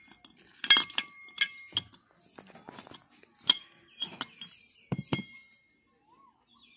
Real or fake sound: real